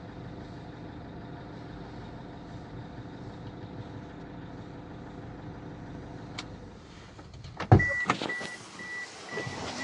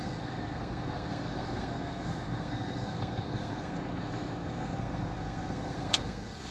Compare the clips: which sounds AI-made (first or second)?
second